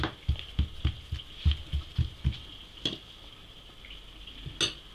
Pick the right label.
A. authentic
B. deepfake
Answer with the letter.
A